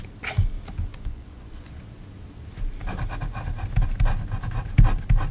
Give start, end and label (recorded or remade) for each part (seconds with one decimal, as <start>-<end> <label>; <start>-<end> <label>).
0.0-0.9 recorded; 0.9-1.7 remade; 1.7-5.3 recorded